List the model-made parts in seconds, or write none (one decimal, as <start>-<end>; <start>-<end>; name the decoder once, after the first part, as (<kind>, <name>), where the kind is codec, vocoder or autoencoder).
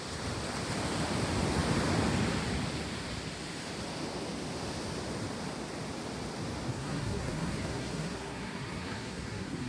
6.7-9.7 (codec, SNAC)